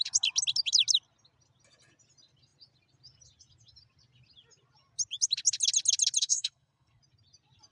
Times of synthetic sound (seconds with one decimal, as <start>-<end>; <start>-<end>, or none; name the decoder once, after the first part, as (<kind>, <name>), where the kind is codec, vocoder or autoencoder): 6.2-7.0 (codec, SNAC)